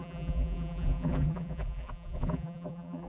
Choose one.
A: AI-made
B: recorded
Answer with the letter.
A